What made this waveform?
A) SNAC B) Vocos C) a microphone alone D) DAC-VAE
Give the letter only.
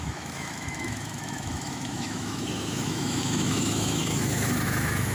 D